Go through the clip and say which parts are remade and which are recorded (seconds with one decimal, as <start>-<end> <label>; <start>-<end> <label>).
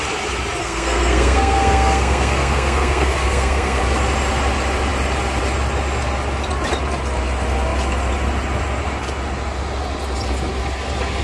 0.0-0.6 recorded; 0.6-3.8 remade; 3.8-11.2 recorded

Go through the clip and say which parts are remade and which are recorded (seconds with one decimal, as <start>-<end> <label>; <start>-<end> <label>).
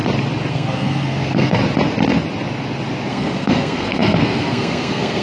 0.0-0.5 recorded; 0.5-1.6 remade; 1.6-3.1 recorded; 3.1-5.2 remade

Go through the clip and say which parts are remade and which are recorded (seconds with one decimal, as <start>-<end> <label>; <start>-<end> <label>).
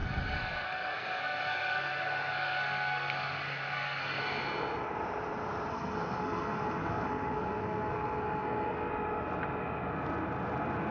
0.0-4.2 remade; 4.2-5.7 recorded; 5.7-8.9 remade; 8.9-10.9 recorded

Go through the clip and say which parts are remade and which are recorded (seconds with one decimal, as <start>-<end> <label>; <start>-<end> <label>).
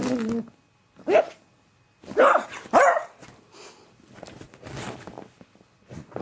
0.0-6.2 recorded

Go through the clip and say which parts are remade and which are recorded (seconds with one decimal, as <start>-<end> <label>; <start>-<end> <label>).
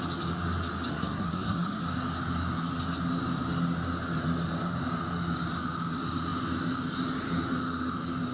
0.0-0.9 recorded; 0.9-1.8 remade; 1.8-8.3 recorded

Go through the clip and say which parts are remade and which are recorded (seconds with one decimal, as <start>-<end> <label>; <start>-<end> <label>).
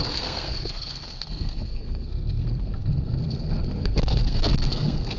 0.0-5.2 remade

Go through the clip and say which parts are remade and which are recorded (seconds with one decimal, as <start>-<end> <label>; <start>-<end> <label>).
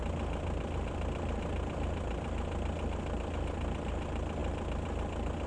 0.0-5.5 recorded